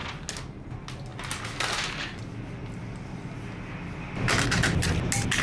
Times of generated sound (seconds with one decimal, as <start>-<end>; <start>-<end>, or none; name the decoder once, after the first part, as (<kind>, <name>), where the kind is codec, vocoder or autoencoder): none